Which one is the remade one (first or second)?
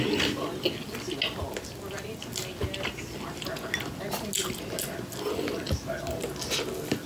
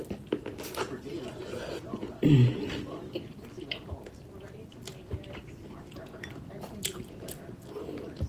second